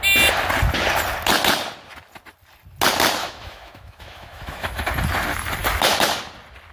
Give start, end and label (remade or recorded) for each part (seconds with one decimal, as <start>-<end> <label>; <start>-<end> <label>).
0.0-3.2 recorded; 3.2-4.8 remade; 4.8-6.7 recorded